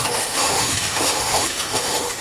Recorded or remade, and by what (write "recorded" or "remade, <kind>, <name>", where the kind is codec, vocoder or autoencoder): remade, autoencoder, DAC-VAE